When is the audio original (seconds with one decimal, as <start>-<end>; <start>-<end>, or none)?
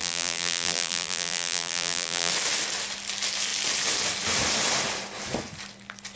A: 2.3-6.2